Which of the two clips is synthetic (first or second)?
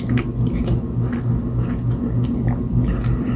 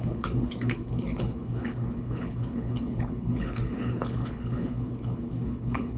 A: second